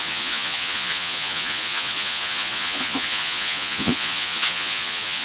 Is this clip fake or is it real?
fake